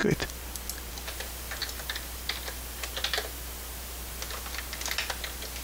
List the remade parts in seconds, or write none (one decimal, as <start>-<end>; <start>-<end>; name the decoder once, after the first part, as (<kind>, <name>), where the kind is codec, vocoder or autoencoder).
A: none